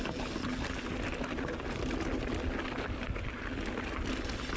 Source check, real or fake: real